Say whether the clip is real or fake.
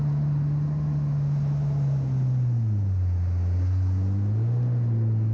real